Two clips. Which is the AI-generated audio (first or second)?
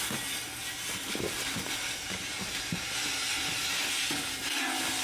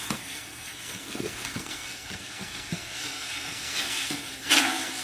second